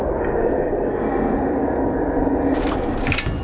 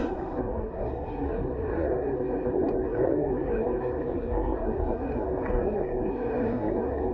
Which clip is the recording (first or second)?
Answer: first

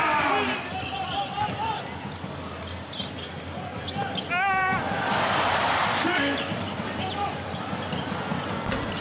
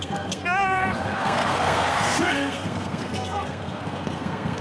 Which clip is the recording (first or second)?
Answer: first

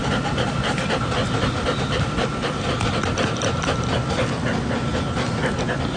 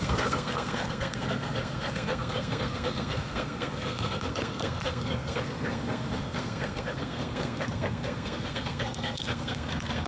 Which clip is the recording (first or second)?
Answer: first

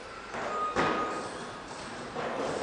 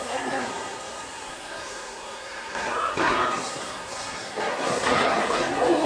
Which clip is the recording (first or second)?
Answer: first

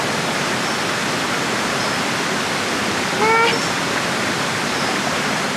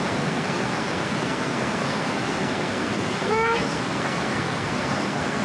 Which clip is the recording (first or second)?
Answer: first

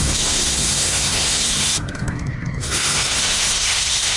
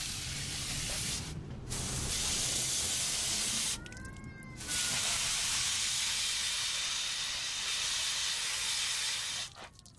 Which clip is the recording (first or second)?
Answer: second